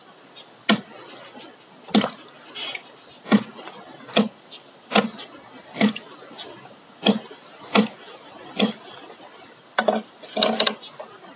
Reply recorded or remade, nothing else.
recorded